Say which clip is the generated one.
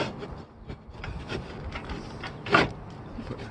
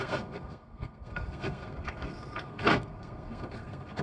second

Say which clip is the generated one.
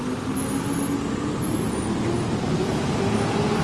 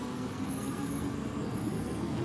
second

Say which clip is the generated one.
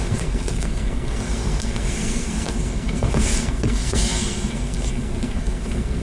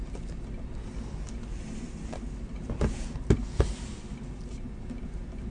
first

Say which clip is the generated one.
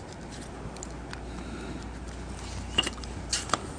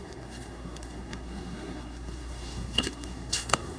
second